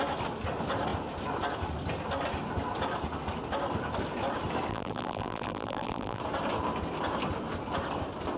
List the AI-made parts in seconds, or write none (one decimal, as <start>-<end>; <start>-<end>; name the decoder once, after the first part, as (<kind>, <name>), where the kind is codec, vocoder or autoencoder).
4.7-6.2 (vocoder, BigVGAN v2)